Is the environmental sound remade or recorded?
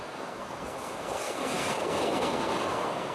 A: remade